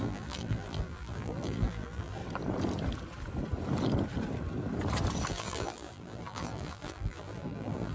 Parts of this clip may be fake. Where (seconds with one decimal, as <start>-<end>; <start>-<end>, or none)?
0.0-2.2; 5.3-7.9